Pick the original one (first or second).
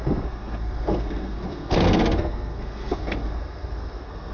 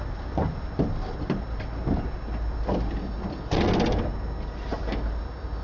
second